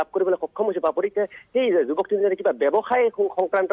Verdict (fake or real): real